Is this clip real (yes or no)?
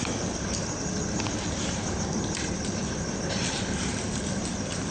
yes